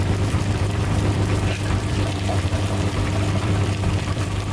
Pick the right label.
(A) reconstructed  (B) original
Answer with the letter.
A